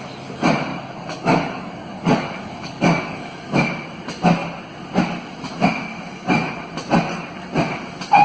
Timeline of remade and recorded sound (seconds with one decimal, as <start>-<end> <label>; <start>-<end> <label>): 0.0-0.7 recorded; 0.7-3.4 remade; 3.4-8.2 recorded